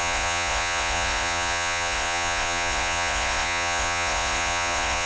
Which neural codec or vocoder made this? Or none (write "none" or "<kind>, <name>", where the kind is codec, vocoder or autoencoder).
vocoder, Vocos